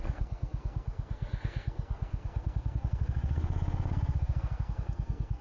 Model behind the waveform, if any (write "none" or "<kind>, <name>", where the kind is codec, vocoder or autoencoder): codec, SNAC